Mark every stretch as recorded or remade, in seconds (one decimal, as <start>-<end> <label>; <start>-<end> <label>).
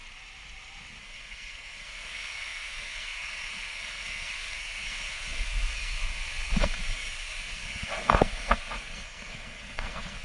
0.0-1.0 recorded; 1.0-10.2 remade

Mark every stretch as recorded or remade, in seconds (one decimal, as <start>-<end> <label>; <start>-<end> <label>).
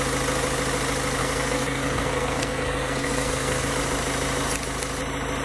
0.0-1.2 recorded; 1.2-3.7 remade; 3.7-5.4 recorded